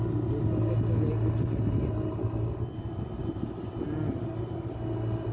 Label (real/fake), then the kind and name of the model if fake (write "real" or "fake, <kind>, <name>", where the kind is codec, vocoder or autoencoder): real